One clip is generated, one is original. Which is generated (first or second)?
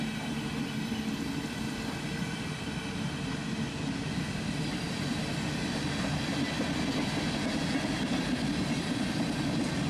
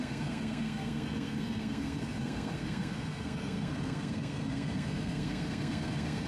second